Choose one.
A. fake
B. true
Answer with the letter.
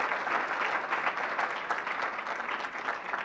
B